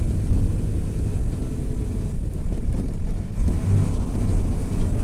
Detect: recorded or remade recorded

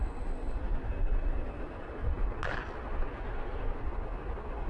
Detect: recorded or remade recorded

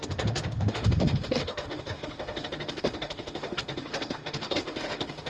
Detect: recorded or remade remade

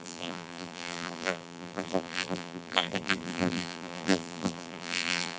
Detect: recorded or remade remade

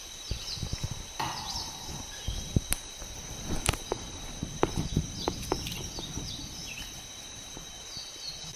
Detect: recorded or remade remade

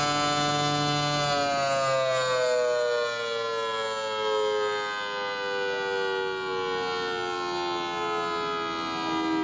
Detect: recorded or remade recorded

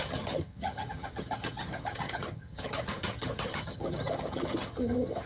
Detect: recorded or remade remade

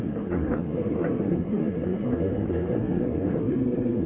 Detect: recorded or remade remade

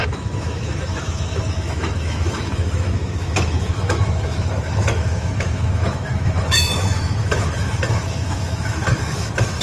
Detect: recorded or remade remade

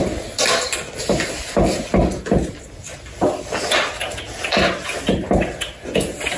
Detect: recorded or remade recorded